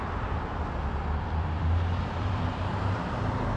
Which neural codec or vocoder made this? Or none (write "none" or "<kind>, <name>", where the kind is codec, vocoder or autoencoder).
vocoder, BigVGAN v2